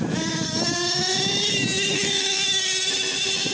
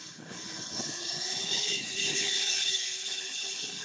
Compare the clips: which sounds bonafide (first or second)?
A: first